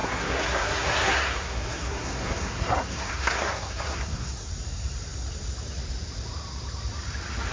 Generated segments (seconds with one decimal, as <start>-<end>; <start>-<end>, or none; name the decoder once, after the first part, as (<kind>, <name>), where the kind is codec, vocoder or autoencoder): 0.0-4.5 (codec, SNAC)

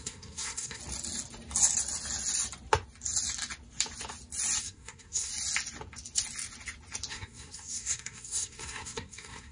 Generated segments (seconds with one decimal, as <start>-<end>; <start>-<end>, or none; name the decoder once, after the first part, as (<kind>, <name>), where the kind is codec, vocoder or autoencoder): 0.0-0.8 (codec, SNAC); 4.6-5.3; 7.1-9.5

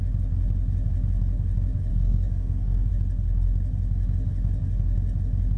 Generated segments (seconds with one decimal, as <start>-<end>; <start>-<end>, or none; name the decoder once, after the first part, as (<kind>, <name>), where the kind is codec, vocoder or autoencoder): 1.9-2.9 (codec, SNAC)

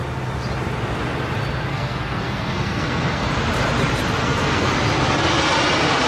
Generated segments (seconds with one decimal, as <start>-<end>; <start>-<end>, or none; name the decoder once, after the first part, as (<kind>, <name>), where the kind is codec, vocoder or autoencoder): 1.7-3.3 (codec, SNAC); 4.2-4.7

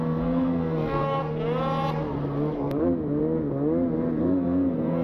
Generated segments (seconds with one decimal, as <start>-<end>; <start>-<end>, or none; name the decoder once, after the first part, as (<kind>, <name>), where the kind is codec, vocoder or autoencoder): 0.0-1.2 (codec, SNAC); 4.2-5.0

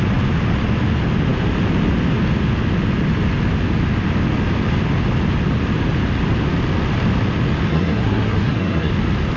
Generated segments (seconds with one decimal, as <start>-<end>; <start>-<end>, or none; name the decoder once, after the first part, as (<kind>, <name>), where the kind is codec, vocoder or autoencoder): 7.7-8.9 (codec, SNAC)